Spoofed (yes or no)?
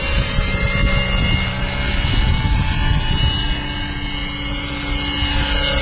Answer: no